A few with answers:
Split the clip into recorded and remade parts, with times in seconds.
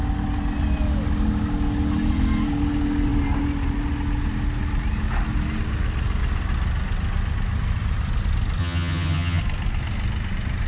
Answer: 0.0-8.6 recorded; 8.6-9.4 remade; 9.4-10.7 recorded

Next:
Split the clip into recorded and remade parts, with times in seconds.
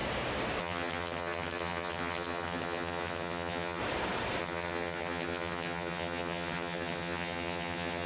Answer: 0.0-0.6 recorded; 0.6-3.8 remade; 3.8-4.4 recorded; 4.4-8.1 remade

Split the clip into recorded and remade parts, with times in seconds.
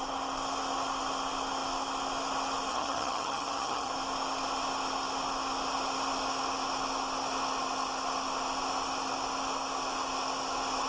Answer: 0.0-2.7 recorded; 2.7-3.9 remade; 3.9-10.9 recorded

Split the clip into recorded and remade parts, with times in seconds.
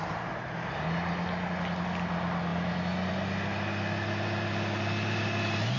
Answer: 0.0-5.8 recorded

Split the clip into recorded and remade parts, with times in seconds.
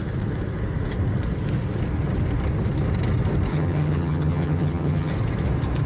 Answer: 0.0-3.5 recorded; 3.5-5.1 remade; 5.1-5.9 recorded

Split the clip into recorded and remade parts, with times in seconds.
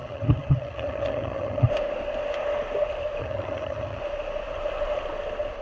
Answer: 0.0-1.7 remade; 1.7-3.2 recorded; 3.2-4.0 remade; 4.0-5.6 recorded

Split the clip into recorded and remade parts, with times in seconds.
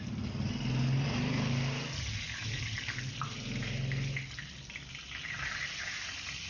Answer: 0.0-6.5 recorded